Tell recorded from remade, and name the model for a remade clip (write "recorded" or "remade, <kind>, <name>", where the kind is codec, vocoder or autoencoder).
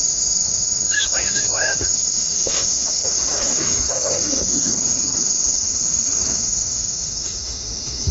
remade, autoencoder, DAC-VAE